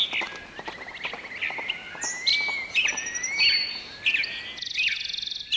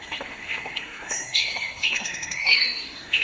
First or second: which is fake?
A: second